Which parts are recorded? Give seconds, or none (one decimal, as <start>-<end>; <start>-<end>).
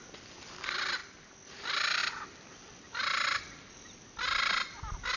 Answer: 0.0-5.2